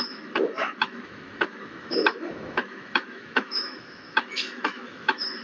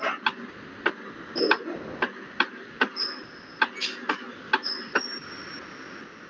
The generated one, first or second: first